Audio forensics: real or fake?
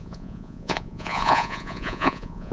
fake